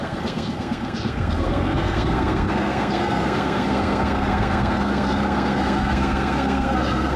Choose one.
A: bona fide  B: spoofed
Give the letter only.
B